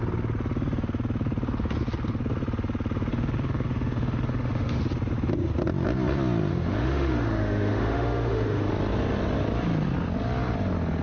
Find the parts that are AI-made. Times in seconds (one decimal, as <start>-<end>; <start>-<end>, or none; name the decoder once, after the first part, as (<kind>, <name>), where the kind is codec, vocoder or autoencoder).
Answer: 3.1-4.8 (autoencoder, DAC-VAE); 6.5-8.7